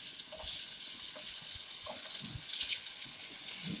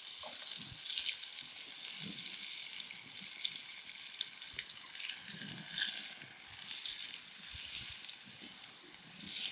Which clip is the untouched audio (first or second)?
second